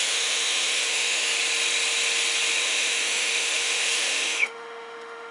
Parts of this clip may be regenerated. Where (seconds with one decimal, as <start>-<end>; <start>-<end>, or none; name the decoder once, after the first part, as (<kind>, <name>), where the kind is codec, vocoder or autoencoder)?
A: 0.0-1.3 (autoencoder, DAC-VAE); 2.6-5.3